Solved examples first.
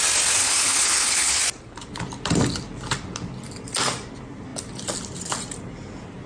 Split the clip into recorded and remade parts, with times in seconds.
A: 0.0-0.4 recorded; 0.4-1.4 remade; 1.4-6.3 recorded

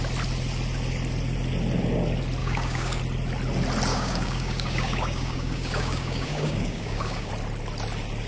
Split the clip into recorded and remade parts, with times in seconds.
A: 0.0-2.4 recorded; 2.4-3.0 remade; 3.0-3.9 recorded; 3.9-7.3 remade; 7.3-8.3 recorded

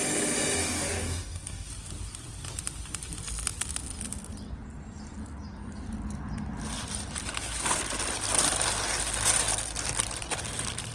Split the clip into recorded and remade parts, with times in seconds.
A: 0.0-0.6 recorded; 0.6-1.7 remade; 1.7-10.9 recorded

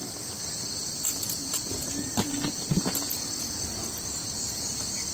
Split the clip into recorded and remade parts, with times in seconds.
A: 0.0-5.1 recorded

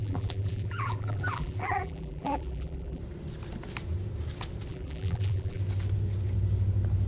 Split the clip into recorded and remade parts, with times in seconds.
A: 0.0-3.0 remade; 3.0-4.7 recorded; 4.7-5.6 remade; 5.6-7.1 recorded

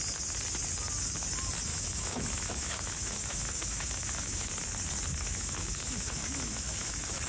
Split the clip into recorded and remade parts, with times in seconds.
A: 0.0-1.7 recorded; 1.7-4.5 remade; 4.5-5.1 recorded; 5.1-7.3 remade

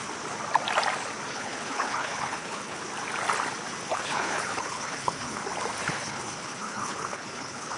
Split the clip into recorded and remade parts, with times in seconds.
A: 0.0-1.3 recorded; 1.3-2.8 remade; 2.8-3.9 recorded; 3.9-5.4 remade; 5.4-5.9 recorded; 5.9-7.8 remade

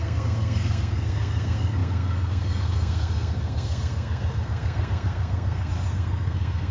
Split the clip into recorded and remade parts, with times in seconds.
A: 0.0-6.7 remade